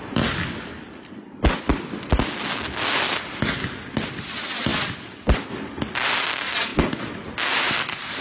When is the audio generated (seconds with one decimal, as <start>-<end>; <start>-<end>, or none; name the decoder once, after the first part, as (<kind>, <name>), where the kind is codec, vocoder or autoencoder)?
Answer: none